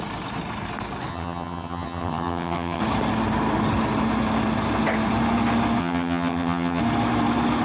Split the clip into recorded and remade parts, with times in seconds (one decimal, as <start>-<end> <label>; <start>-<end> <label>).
0.0-1.1 recorded; 1.1-2.8 remade; 2.8-5.8 recorded; 5.8-6.8 remade; 6.8-7.6 recorded